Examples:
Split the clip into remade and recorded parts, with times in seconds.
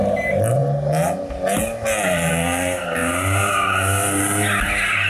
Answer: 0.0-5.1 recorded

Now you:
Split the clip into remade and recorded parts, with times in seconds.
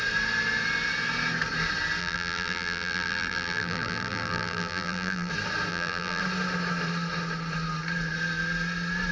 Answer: 0.0-2.0 recorded; 2.0-5.3 remade; 5.3-5.7 recorded; 5.7-6.2 remade; 6.2-9.1 recorded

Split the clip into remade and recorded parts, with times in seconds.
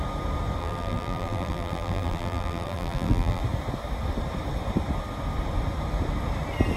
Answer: 0.0-0.6 recorded; 0.6-3.4 remade; 3.4-6.8 recorded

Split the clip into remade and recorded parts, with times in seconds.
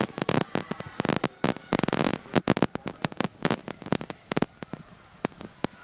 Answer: 0.0-2.1 recorded; 2.1-3.6 remade; 3.6-5.8 recorded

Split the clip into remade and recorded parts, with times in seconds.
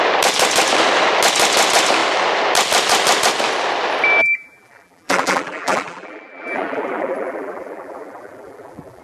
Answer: 0.0-4.2 recorded; 4.2-9.0 remade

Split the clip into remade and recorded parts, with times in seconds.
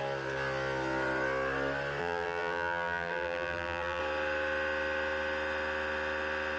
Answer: 0.0-2.0 recorded; 2.0-4.0 remade; 4.0-6.6 recorded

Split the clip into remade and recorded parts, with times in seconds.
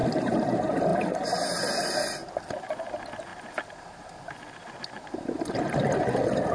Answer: 0.0-0.5 remade; 0.5-6.5 recorded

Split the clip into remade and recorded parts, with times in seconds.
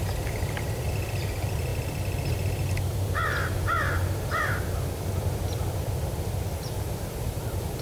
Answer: 0.0-1.7 remade; 1.7-2.3 recorded; 2.3-7.8 remade